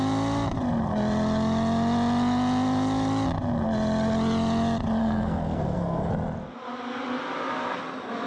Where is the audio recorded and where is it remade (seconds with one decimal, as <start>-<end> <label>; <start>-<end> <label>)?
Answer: 0.0-5.0 recorded; 5.0-6.1 remade; 6.1-8.3 recorded